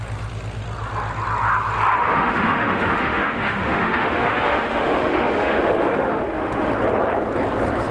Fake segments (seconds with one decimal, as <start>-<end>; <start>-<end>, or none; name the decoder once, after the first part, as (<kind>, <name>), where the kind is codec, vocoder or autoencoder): 2.0-6.7 (autoencoder, DAC-VAE)